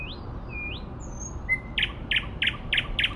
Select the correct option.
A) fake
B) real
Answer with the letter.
B